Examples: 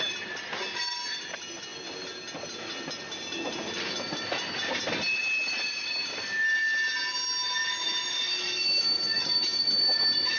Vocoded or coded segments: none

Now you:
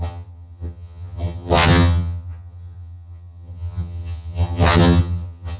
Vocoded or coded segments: 0.0-5.6 (vocoder, HiFi-GAN)

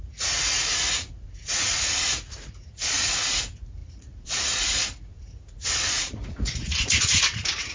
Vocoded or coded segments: 0.0-7.7 (vocoder, Vocos)

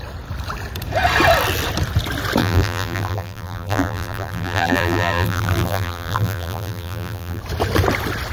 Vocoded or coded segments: 2.4-7.4 (vocoder, BigVGAN v2)